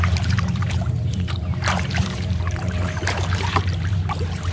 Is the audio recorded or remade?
remade